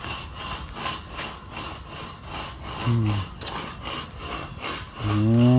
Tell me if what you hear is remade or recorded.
recorded